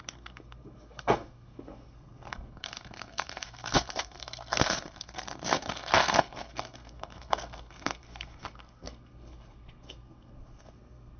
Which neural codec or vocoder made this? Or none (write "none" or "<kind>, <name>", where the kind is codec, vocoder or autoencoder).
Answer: codec, SNAC